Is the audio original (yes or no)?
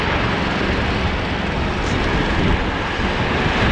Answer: no